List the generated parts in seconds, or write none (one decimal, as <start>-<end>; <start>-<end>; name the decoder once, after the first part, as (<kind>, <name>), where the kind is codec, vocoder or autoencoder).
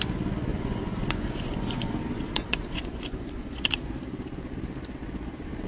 0.5-3.9 (vocoder, Vocos)